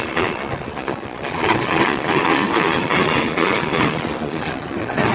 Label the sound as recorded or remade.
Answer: remade